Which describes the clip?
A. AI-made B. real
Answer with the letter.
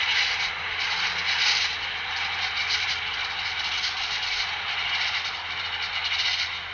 B